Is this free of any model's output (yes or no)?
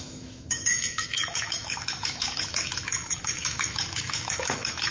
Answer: no